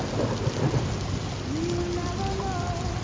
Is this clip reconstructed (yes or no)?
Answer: no